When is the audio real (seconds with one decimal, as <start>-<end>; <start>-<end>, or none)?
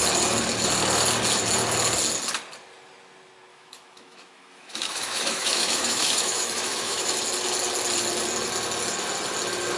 0.0-3.5; 7.2-9.8